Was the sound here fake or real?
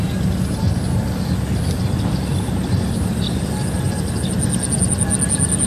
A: real